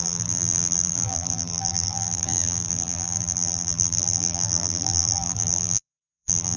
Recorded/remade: remade